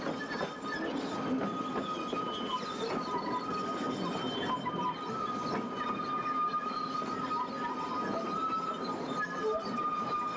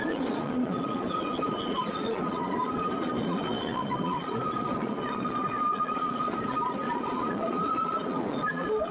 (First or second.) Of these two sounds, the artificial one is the second